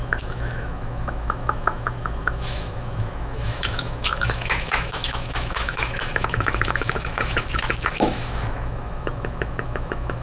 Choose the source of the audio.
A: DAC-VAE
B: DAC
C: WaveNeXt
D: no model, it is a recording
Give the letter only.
A